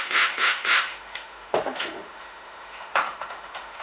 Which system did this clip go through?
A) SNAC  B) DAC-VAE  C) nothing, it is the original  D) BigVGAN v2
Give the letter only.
B